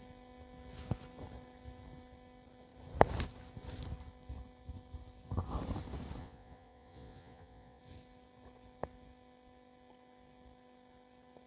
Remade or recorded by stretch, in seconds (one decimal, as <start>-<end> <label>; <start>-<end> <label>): 0.0-6.2 recorded; 6.2-7.8 remade; 7.8-11.5 recorded